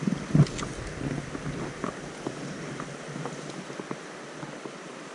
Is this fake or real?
real